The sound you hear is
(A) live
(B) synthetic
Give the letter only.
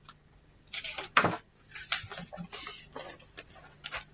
A